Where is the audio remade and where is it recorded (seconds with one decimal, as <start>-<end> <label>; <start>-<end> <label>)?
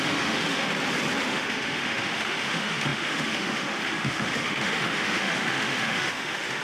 0.0-0.7 remade; 0.7-1.2 recorded; 1.2-6.6 remade